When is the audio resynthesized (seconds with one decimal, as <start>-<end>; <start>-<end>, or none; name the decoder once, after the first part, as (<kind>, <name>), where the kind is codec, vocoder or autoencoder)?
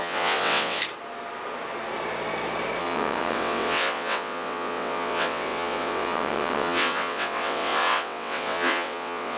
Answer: 0.0-0.8 (vocoder, WaveNeXt); 2.8-9.4